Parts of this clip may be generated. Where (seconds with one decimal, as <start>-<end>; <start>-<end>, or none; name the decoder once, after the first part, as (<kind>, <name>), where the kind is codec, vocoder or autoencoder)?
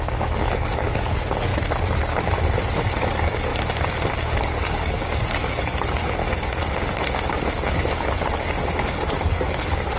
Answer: 0.0-1.5 (codec, DAC); 3.0-3.5; 4.4-6.2; 7.7-10.0